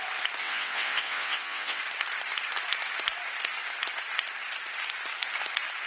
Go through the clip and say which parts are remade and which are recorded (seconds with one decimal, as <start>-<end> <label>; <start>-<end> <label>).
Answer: 0.0-0.4 recorded; 0.4-1.8 remade; 1.8-5.9 recorded